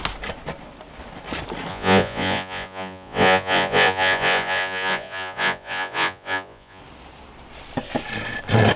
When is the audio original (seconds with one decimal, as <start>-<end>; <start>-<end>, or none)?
0.0-1.7; 6.8-8.8